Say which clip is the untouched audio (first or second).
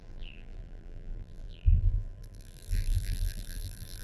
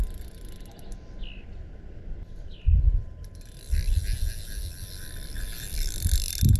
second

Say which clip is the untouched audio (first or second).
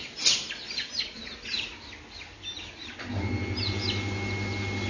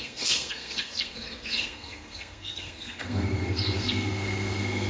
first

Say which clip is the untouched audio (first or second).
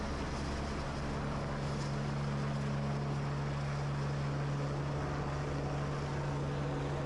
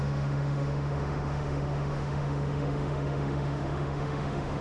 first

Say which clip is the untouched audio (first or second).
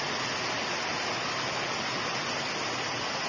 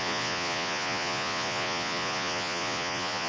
first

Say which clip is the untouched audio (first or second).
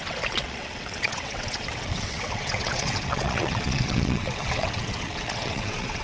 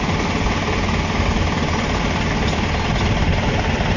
second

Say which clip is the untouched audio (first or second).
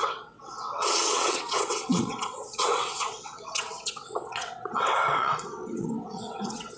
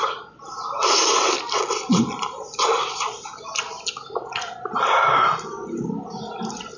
second